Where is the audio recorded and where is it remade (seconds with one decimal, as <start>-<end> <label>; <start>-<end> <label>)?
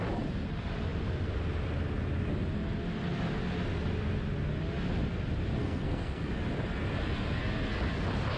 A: 0.0-5.6 recorded; 5.6-6.3 remade; 6.3-8.4 recorded